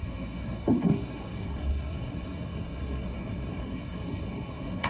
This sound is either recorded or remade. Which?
remade